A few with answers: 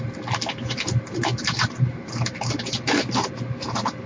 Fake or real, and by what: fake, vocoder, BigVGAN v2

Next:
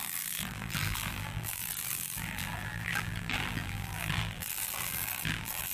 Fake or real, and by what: fake, vocoder, BigVGAN v2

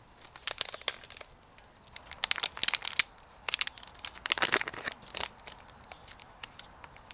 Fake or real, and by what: real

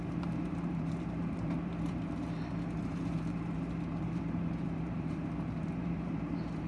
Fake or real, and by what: fake, vocoder, BigVGAN v2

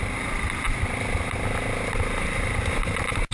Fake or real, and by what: fake, vocoder, BigVGAN v2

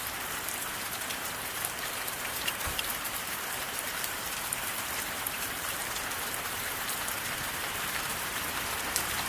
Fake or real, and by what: fake, vocoder, BigVGAN v2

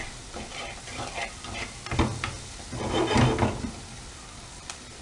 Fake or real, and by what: fake, vocoder, BigVGAN v2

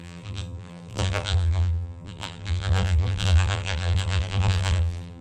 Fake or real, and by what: fake, vocoder, BigVGAN v2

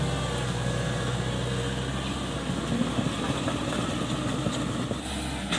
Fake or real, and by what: real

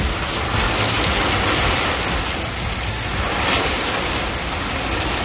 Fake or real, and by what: real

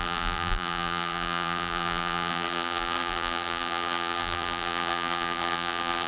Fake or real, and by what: fake, vocoder, BigVGAN v2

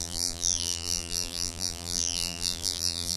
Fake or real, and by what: fake, vocoder, BigVGAN v2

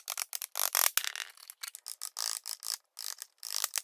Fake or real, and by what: real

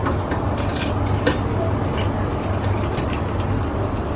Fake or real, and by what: real